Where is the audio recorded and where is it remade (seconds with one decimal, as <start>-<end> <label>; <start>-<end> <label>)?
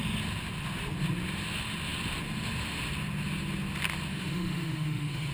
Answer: 0.0-4.1 recorded; 4.1-5.3 remade